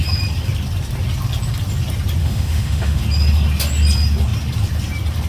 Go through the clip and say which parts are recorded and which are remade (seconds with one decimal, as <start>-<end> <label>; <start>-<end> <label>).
0.0-2.2 recorded; 2.2-3.0 remade; 3.0-5.3 recorded